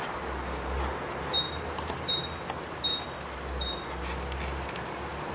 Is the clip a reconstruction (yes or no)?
no